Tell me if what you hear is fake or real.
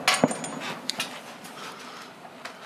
real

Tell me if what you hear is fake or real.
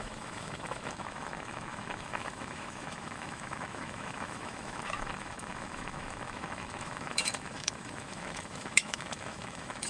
fake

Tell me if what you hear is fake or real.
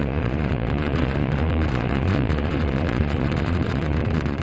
fake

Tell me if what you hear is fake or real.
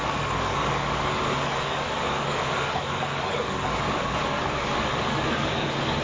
fake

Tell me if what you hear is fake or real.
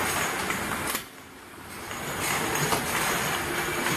real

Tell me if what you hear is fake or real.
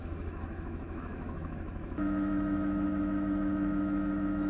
fake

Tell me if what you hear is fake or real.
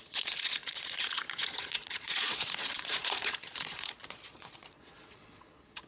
fake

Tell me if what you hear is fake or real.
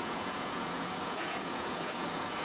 fake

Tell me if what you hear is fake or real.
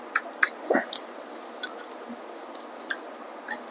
real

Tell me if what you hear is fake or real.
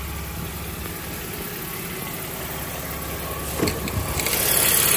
real